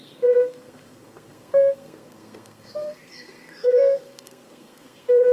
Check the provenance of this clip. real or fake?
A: fake